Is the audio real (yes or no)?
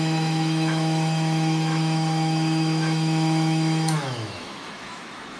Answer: no